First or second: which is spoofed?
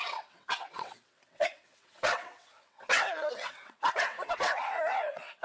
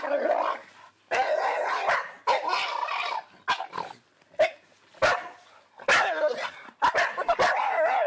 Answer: first